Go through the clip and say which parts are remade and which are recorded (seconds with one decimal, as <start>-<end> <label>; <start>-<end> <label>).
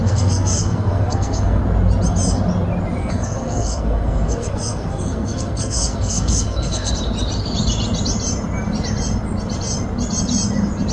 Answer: 0.0-1.6 remade; 1.6-3.0 recorded; 3.0-6.9 remade; 6.9-10.9 recorded